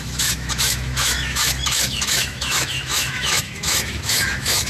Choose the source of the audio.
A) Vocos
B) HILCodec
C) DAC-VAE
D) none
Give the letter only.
C